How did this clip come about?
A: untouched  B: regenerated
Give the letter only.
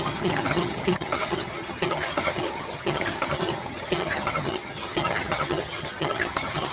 B